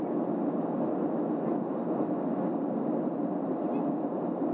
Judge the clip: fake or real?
real